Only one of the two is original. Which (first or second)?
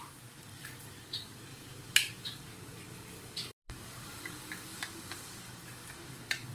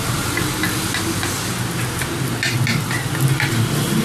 second